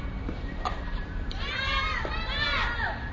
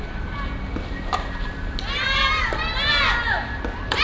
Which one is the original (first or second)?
second